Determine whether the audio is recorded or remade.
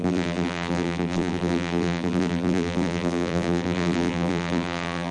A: remade